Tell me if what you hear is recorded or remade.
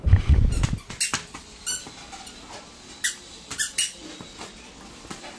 recorded